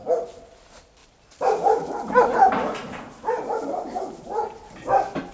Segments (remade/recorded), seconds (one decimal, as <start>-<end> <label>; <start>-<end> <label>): 0.0-1.0 recorded; 1.0-4.0 remade; 4.0-5.3 recorded